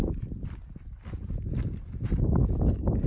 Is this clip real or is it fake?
real